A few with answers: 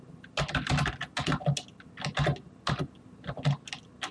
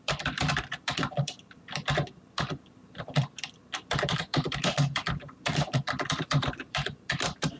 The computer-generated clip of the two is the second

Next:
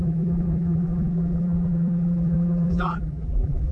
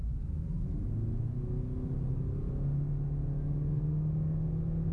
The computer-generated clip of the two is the first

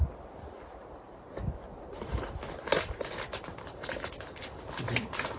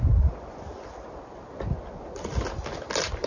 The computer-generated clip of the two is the first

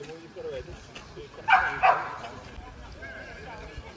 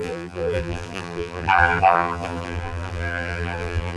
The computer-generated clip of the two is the second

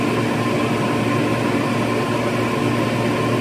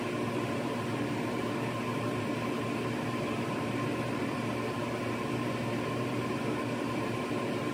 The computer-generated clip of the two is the second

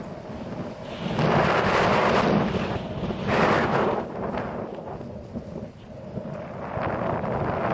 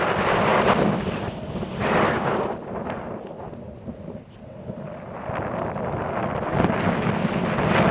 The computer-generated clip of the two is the second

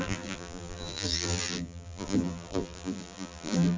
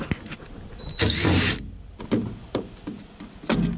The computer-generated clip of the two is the first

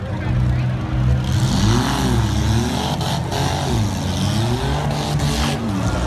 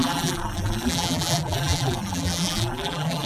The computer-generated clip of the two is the second